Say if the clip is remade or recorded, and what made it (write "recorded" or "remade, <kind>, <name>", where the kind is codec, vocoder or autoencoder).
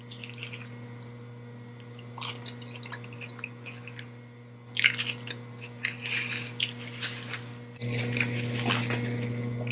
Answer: recorded